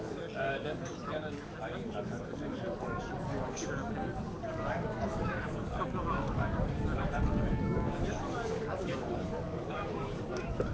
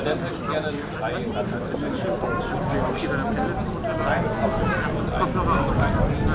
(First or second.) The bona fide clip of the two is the second